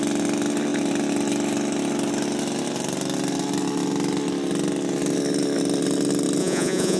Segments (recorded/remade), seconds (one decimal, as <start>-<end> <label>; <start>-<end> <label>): 0.0-6.4 recorded; 6.4-7.0 remade